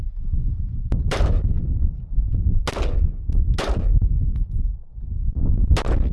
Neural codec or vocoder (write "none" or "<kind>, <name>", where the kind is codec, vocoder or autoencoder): none